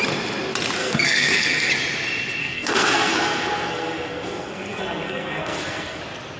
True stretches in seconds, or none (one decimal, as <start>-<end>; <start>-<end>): 0.0-0.8; 1.7-2.4; 6.0-6.4

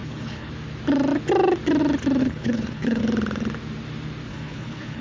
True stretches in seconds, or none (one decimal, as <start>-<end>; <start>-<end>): 0.5-2.2; 3.0-4.3

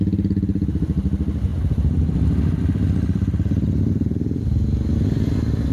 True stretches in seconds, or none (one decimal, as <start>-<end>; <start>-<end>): 0.0-5.7

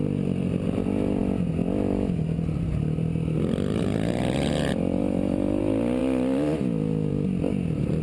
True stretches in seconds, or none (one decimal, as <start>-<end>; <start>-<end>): 0.0-5.0; 5.6-8.0

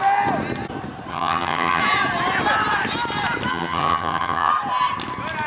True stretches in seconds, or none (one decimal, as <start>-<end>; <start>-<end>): 0.0-1.1; 1.8-3.5; 4.5-5.5

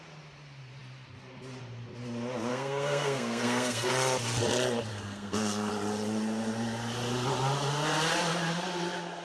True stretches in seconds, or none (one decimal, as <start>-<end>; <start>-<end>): 0.0-2.5; 3.9-4.9; 5.7-9.2

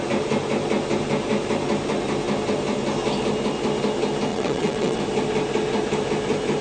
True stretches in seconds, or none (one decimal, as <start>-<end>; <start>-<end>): 0.0-4.3; 5.0-6.6